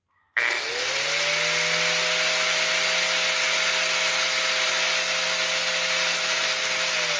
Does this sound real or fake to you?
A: real